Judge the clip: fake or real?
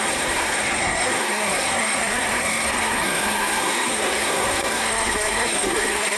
fake